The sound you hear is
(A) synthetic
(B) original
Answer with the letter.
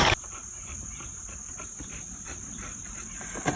B